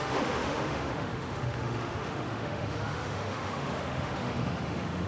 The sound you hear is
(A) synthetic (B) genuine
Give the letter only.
A